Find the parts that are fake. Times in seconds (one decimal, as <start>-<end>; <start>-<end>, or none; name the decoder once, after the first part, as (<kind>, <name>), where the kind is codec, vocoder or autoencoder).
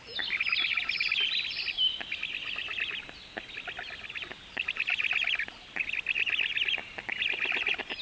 none